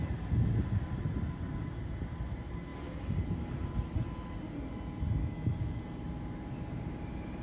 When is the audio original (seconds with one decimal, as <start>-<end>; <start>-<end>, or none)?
0.0-5.2; 5.8-7.4